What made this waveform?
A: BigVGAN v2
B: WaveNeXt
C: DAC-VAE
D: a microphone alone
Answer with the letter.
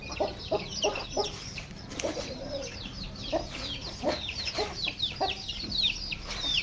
A